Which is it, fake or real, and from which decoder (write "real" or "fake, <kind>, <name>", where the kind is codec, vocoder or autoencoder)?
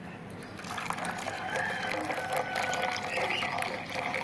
real